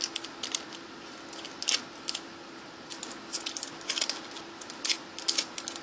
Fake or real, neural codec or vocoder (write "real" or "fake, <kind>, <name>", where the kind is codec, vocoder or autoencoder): real